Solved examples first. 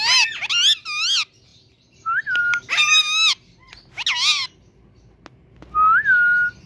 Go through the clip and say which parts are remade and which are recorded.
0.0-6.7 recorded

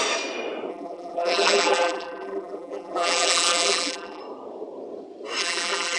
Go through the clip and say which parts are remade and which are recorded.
0.0-0.7 recorded; 0.7-4.2 remade; 4.2-5.4 recorded; 5.4-6.0 remade

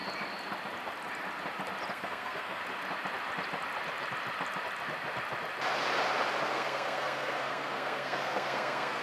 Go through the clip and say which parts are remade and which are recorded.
0.0-1.9 recorded; 1.9-2.6 remade; 2.6-6.5 recorded; 6.5-9.0 remade

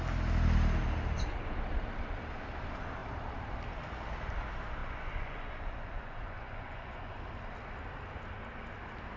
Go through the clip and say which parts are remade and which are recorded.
0.0-4.8 recorded; 4.8-7.2 remade; 7.2-9.2 recorded